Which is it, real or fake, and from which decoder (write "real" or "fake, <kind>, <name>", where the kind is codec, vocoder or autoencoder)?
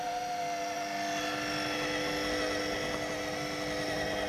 real